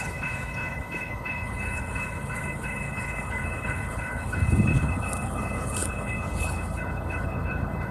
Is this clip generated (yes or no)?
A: yes